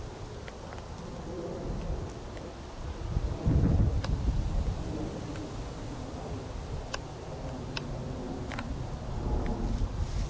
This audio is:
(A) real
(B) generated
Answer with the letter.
A